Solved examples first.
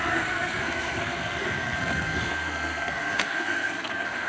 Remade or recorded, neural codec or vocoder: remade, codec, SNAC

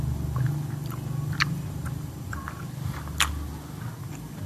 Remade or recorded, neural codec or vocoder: recorded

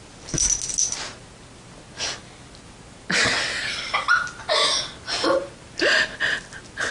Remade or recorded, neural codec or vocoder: recorded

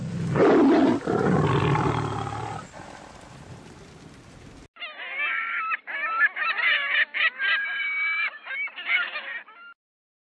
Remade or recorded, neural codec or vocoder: recorded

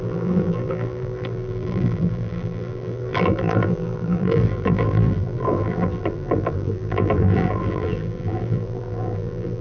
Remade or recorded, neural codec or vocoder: remade, vocoder, BigVGAN v2